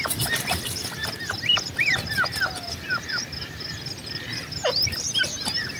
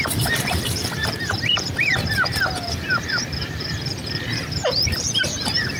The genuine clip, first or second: first